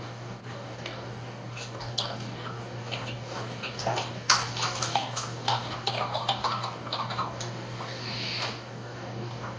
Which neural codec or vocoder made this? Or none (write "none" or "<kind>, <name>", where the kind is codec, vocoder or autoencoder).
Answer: codec, DAC